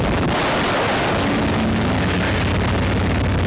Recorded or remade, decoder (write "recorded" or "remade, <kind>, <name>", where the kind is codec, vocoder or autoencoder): recorded